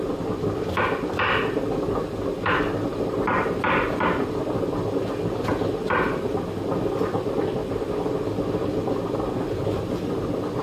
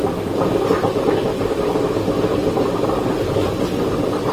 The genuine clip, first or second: first